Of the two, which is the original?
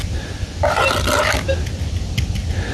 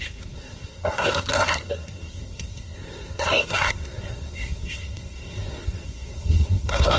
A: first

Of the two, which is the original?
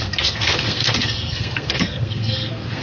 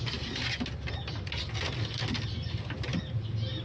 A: second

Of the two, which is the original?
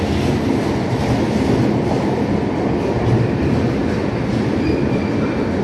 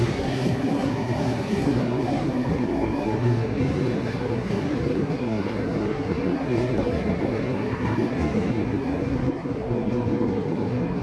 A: first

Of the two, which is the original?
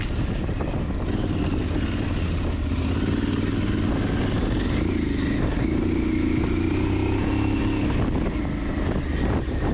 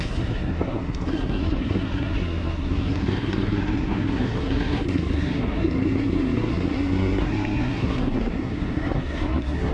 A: first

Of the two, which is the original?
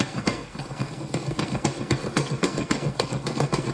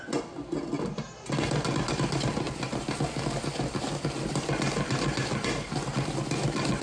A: second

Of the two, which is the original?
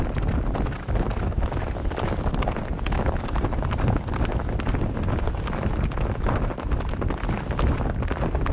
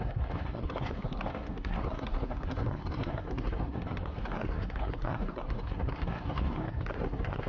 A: first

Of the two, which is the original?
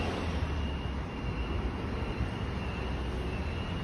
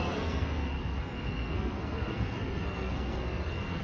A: first